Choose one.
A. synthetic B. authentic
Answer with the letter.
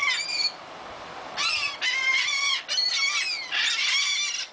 B